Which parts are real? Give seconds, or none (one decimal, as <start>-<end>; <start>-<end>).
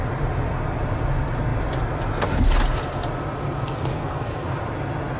0.0-3.9; 4.5-5.2